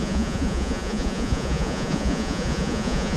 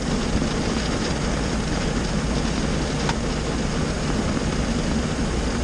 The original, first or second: second